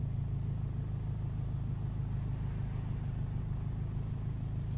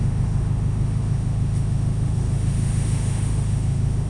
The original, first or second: first